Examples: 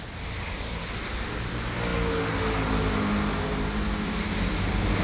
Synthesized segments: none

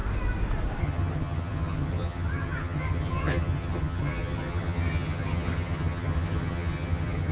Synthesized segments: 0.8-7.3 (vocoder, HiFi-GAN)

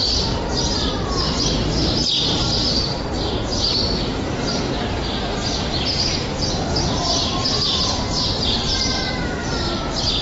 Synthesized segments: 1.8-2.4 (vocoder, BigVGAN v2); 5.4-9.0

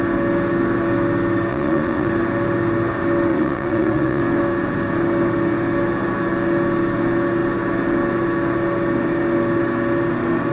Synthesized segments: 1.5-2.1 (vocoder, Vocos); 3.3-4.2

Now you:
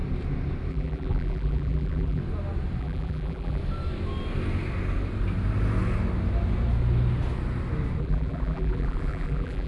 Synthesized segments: 0.7-2.2 (vocoder, BigVGAN v2); 2.8-3.6; 8.0-9.7